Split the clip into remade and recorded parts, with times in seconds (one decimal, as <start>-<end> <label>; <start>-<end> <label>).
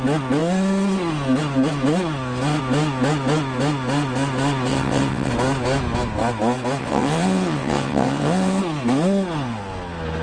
0.0-4.7 recorded; 4.7-5.3 remade; 5.3-6.8 recorded; 6.8-8.6 remade; 8.6-10.2 recorded